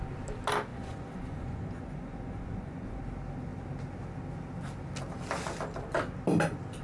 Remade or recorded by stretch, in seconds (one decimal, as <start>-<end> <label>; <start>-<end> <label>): 0.0-0.7 recorded; 0.7-3.0 remade; 3.0-6.8 recorded